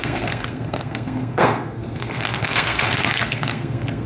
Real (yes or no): no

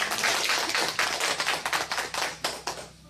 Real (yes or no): yes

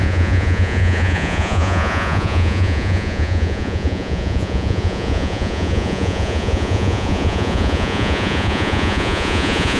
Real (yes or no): no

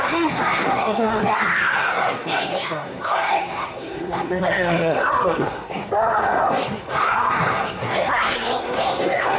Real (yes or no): no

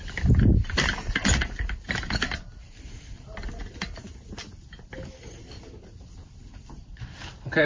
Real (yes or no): yes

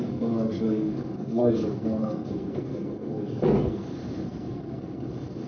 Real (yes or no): no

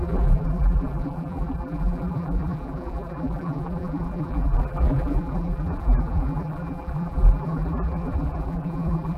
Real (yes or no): no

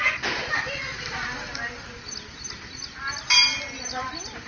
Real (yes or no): yes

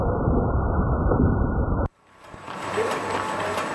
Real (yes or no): no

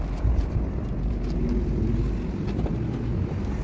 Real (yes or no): yes